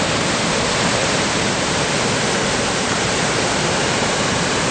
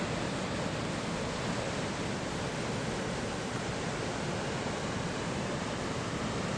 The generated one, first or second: first